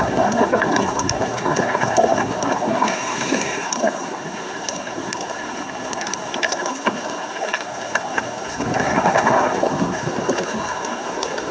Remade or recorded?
remade